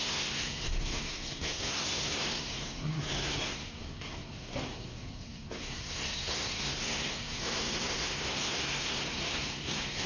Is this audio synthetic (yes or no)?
yes